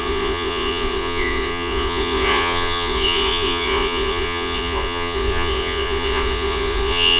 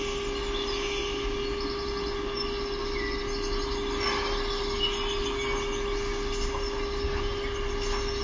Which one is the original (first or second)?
second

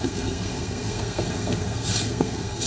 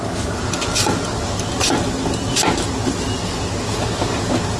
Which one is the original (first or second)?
second